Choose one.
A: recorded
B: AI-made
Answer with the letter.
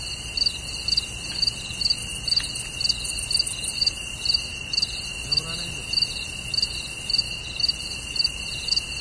A